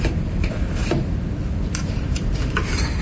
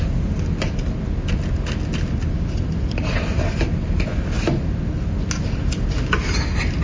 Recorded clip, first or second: second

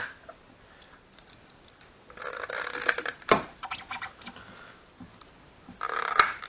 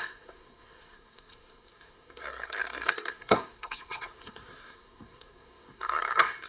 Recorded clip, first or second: first